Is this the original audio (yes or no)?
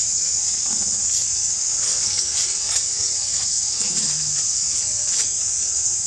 no